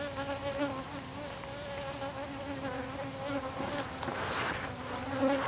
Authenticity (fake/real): real